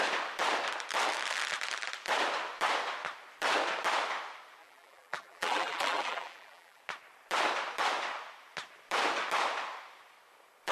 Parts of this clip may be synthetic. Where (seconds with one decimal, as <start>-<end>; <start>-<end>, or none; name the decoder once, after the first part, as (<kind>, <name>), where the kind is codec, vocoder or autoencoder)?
4.6-6.8 (vocoder, BigVGAN v2)